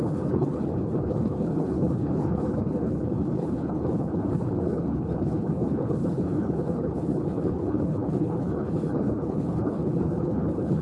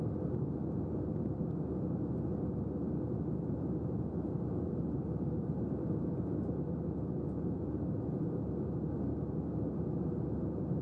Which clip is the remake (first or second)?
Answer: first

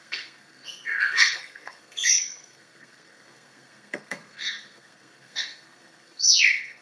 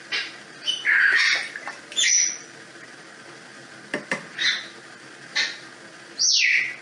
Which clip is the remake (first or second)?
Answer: first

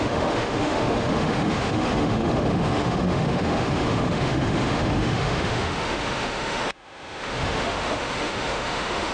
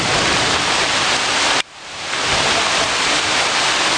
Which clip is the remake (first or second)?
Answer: first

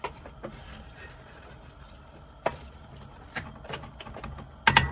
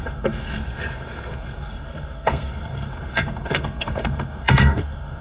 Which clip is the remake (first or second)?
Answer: second